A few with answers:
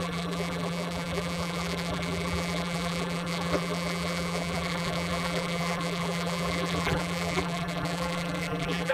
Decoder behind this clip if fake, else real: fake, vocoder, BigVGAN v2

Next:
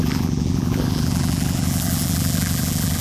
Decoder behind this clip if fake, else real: fake, vocoder, BigVGAN v2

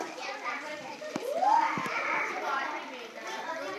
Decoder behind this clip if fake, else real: fake, vocoder, BigVGAN v2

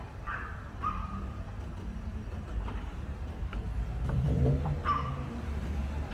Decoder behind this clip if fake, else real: fake, vocoder, BigVGAN v2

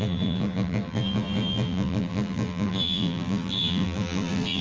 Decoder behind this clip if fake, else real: fake, vocoder, BigVGAN v2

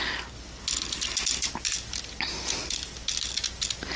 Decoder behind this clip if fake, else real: real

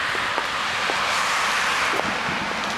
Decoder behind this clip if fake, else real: real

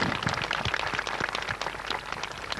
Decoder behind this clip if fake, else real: real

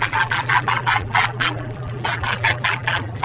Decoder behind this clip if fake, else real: fake, vocoder, BigVGAN v2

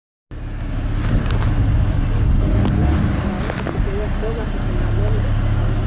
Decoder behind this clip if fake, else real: real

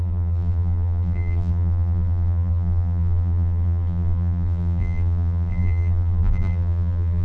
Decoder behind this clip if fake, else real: fake, vocoder, BigVGAN v2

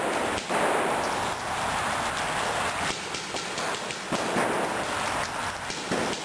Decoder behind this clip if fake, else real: real